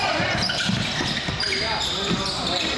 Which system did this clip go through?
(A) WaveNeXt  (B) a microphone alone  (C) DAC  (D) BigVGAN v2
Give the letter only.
D